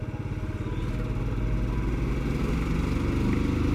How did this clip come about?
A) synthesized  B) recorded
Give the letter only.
B